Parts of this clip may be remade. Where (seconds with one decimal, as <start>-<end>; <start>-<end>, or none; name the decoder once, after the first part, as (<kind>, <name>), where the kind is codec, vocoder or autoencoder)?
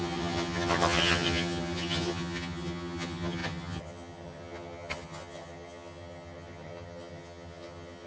0.0-8.1 (vocoder, HiFi-GAN)